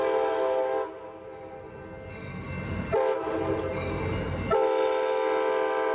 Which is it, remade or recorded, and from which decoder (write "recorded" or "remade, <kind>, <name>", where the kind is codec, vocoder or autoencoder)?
recorded